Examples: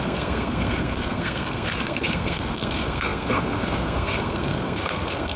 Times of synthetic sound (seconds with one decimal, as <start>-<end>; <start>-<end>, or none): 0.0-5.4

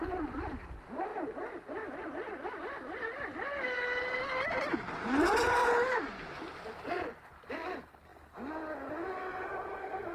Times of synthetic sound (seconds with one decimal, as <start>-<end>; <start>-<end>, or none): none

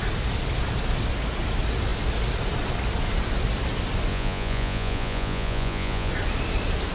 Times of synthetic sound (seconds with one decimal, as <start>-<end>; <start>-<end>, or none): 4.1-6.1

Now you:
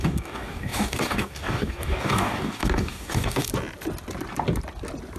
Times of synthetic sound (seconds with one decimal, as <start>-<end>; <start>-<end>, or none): 0.0-3.5

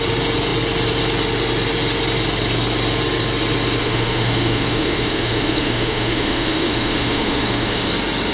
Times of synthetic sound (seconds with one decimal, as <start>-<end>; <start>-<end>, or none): 3.8-7.9

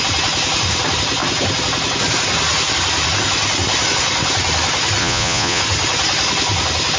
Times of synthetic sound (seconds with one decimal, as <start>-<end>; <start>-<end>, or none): 5.0-5.6

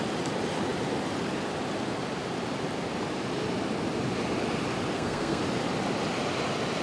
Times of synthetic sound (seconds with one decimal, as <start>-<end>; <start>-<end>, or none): 4.9-5.4

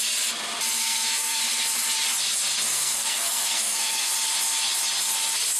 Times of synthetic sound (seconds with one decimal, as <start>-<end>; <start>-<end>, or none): 0.8-1.4; 2.7-4.1